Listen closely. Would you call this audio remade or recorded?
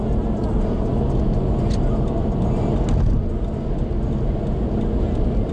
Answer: recorded